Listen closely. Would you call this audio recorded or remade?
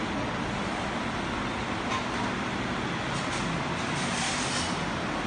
recorded